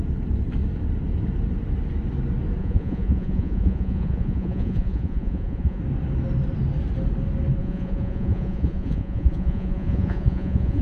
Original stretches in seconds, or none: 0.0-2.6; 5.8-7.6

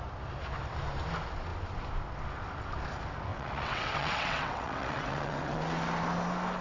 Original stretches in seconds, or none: 0.0-3.3; 5.6-6.6

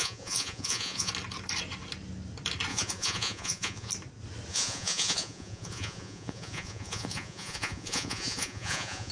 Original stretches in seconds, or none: 1.1-2.7; 3.9-4.5

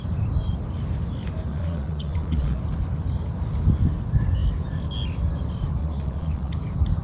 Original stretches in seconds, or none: 0.0-1.5; 2.6-5.8; 6.5-7.0